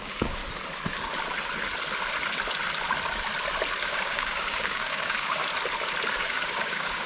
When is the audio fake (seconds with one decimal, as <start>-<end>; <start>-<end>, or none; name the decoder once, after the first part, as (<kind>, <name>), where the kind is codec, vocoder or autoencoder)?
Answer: 0.0-0.4 (codec, DAC); 3.8-5.4; 6.1-7.1